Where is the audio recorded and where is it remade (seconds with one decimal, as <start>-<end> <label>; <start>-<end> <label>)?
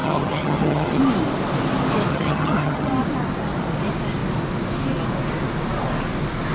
0.0-1.0 remade; 1.0-2.1 recorded; 2.1-2.9 remade; 2.9-6.5 recorded